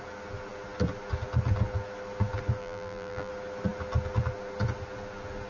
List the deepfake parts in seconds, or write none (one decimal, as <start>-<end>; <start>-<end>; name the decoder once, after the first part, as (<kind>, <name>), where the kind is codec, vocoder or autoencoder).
2.6-3.3 (vocoder, BigVGAN v2)